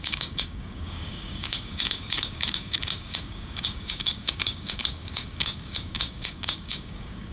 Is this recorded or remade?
remade